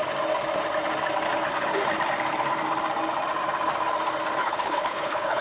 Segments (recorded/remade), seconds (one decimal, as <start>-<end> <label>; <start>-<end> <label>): 0.0-4.4 recorded; 4.4-5.4 remade